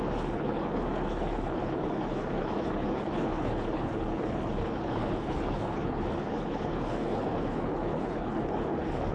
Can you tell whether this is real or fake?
fake